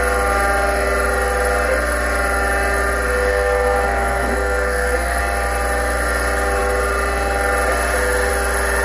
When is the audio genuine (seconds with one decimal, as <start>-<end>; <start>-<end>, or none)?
0.0-3.3; 5.2-8.8